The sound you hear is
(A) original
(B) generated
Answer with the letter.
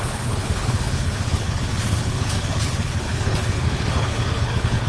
B